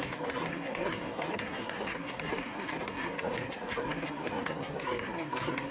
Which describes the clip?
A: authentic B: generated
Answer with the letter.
B